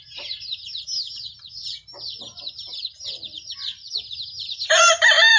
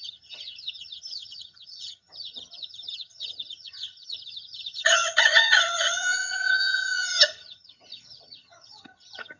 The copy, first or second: second